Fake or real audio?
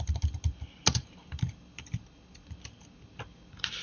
real